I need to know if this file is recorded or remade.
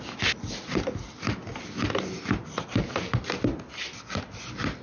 recorded